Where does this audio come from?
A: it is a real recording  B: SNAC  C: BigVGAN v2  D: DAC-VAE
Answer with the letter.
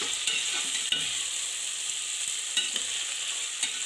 A